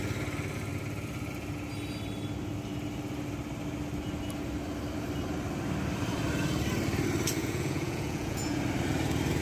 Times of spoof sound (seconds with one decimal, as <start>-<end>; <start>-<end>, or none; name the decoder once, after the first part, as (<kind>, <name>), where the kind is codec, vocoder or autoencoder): 7.4-8.6 (vocoder, Vocos)